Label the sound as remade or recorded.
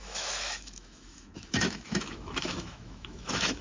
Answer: remade